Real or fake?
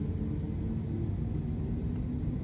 real